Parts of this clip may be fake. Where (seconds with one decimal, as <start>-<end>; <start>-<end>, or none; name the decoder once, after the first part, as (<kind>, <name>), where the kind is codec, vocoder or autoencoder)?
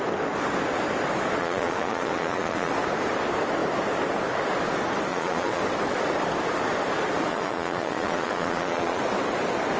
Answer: 1.4-2.7 (vocoder, Vocos); 5.1-5.6; 7.3-9.0